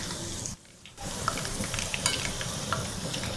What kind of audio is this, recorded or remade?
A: remade